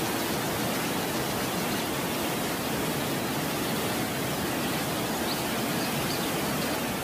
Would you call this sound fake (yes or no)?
no